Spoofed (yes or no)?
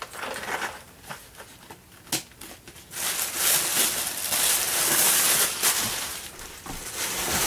no